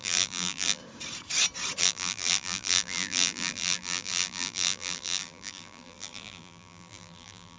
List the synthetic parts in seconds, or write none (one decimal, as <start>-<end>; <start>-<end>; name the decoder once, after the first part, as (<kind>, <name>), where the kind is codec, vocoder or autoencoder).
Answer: 0.0-0.8 (vocoder, BigVGAN v2); 1.8-7.6